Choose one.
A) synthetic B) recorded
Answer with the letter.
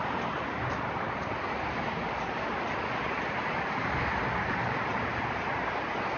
B